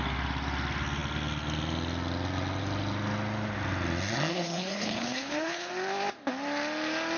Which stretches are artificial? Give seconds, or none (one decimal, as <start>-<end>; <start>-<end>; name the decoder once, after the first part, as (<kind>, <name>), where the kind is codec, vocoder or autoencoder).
4.3-5.7 (codec, HILCodec)